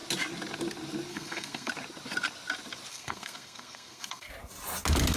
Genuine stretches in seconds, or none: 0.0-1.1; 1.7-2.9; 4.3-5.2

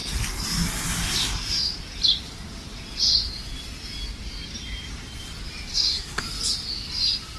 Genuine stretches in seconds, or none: 0.0-5.7; 6.2-7.4

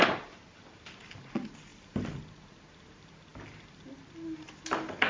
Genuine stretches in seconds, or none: 0.0-5.1

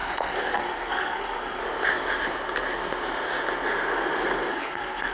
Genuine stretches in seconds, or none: 1.6-4.5

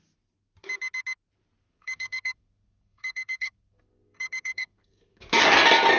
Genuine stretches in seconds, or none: 0.0-1.6; 5.2-6.0

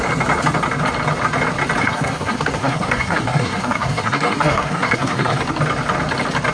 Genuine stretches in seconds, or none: 0.0-1.8; 5.4-6.5